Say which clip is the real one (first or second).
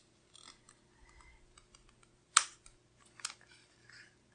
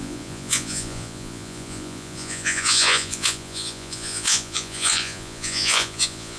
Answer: first